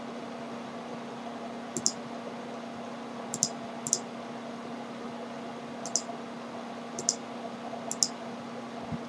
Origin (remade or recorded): recorded